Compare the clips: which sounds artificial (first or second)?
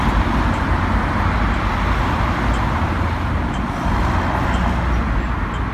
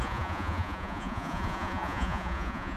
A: second